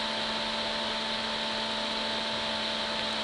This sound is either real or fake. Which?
real